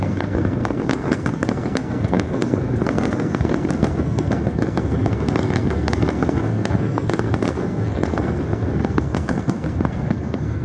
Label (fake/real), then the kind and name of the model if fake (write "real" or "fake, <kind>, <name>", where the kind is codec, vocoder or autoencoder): fake, codec, SNAC